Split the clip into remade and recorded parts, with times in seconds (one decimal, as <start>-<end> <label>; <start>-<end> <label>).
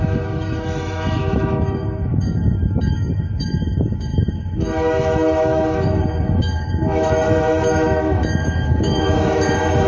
0.0-9.9 remade